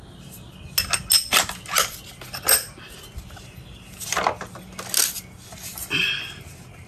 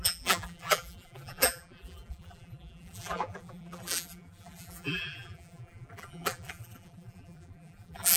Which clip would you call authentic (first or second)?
first